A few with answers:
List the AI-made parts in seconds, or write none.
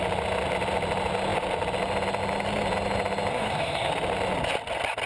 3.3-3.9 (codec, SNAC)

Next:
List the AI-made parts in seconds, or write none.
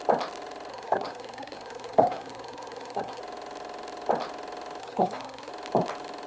0.7-3.2 (codec, SNAC); 4.8-5.5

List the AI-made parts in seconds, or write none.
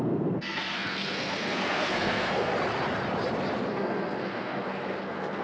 0.0-2.5 (codec, SNAC); 3.7-5.4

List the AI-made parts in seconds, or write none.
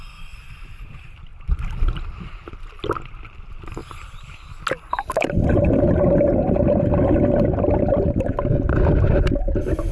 none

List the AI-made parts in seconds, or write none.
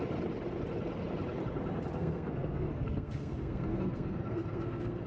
2.0-5.1 (codec, SNAC)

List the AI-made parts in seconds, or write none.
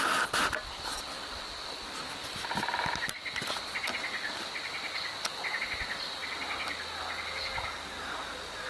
none